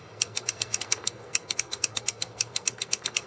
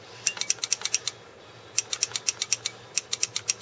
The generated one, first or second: first